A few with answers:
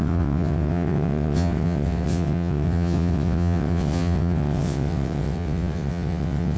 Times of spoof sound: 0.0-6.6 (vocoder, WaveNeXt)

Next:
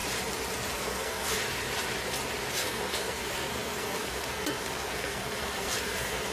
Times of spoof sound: 0.7-1.4 (codec, SNAC); 2.5-6.3

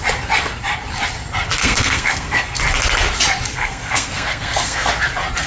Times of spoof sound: 1.6-2.6 (codec, SNAC); 3.5-4.9

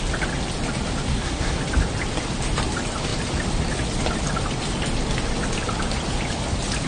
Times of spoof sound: 1.1-1.6 (codec, SNAC)

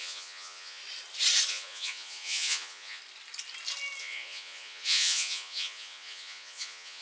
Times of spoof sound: 0.0-0.8 (vocoder, Vocos); 1.5-3.0; 4.0-7.0

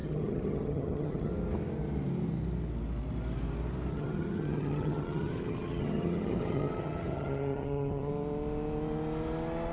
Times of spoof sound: 0.0-1.3 (vocoder, HiFi-GAN); 3.9-8.1

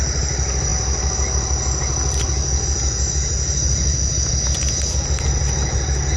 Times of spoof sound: none